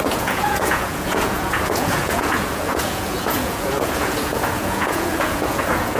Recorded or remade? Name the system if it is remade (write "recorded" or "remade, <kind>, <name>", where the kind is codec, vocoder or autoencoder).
remade, vocoder, Vocos